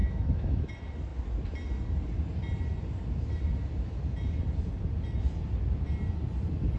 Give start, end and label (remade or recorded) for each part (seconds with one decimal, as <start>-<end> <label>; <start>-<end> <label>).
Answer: 0.0-0.7 remade; 0.7-6.8 recorded